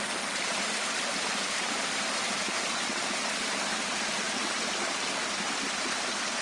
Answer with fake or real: real